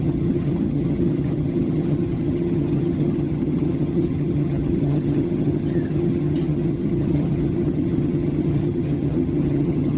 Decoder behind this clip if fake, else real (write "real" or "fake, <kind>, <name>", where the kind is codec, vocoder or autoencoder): fake, vocoder, HiFi-GAN